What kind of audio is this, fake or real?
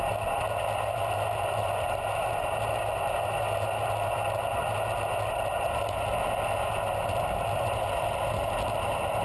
real